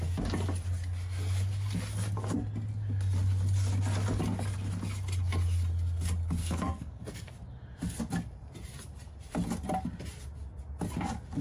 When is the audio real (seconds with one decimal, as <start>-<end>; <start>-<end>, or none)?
0.0-6.4; 7.3-11.4